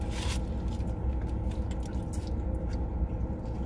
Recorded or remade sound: recorded